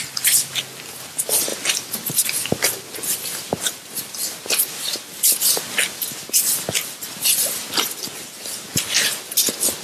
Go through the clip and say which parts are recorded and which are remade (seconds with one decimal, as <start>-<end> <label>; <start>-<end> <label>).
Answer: 0.0-9.8 recorded